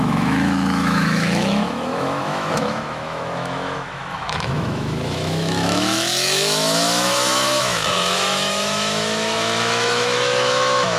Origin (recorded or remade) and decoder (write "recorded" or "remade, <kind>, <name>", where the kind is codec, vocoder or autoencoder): remade, autoencoder, DAC-VAE